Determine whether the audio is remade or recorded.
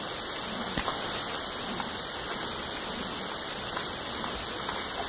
recorded